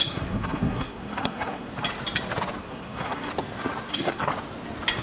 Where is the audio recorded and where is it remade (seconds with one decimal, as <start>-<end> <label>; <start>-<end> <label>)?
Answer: 0.0-1.7 remade; 1.7-2.6 recorded; 2.6-3.3 remade; 3.3-3.9 recorded; 3.9-4.3 remade; 4.3-5.0 recorded